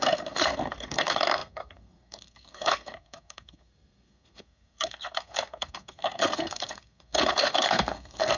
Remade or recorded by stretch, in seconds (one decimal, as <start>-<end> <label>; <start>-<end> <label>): 0.0-8.4 remade